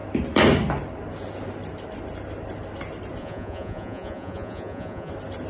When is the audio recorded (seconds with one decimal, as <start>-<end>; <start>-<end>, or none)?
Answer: 0.0-3.2; 5.1-5.5